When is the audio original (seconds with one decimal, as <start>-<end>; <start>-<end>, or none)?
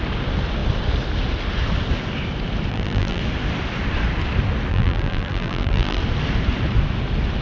0.0-2.7; 3.2-4.7; 6.0-7.4